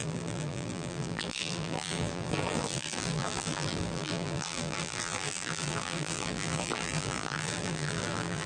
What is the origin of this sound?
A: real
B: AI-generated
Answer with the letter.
B